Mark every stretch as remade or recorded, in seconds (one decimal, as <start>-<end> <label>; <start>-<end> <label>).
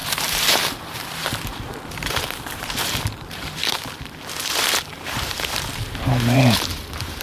0.0-7.2 remade